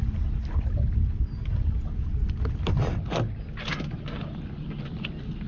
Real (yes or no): yes